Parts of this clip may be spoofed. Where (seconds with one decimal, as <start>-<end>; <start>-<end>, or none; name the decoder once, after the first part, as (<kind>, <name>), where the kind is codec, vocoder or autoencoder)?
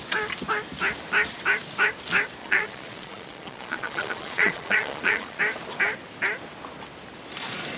2.4-5.4 (vocoder, Vocos)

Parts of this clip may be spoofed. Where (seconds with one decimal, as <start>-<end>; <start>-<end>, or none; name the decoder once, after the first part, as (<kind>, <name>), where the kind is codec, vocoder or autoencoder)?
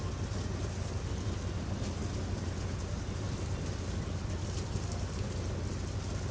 none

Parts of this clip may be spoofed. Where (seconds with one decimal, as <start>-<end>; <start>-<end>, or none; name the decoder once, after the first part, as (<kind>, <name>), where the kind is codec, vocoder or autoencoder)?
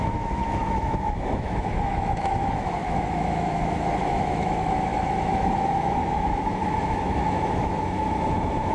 0.0-8.7 (autoencoder, DAC-VAE)